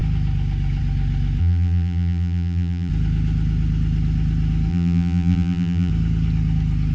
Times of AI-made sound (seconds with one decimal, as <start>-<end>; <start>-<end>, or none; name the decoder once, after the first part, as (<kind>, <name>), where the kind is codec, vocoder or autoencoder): 1.4-2.9 (vocoder, BigVGAN v2); 4.7-5.9